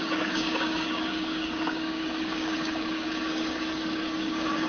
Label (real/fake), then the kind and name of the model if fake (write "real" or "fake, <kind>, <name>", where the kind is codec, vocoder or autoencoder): fake, codec, DAC